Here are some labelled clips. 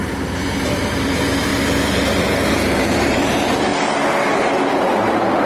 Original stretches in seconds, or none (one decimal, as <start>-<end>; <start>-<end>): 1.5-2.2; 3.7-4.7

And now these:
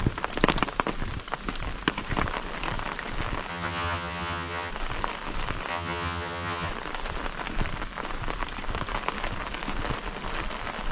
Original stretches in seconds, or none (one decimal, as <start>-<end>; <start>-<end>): 0.0-3.5; 4.7-5.7; 6.7-10.9

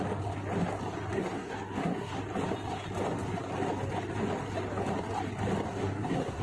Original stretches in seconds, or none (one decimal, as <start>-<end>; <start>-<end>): 0.0-1.2; 2.2-5.7

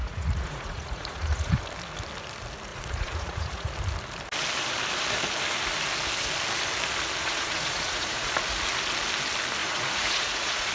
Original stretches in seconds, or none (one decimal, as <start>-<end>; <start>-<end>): 1.6-2.7; 3.7-7.2; 8.3-9.6

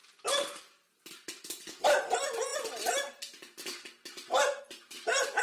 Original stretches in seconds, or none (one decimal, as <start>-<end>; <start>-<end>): 0.0-5.4

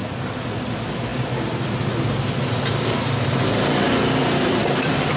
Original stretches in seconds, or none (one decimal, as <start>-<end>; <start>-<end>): 0.0-0.6; 1.1-4.2

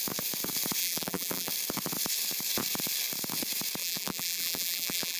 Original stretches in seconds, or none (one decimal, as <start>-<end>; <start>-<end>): 0.0-0.8; 1.5-3.8

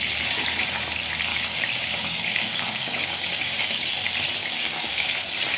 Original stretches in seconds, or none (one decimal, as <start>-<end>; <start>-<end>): 0.0-1.3; 3.9-4.4; 5.1-5.6